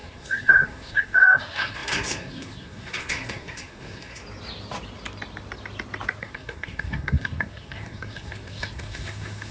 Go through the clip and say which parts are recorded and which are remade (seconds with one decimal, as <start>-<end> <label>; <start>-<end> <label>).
0.0-4.2 remade; 4.2-6.2 recorded; 6.2-9.5 remade